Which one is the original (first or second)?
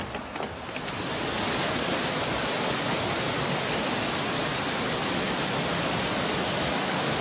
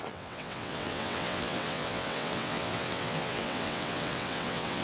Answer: first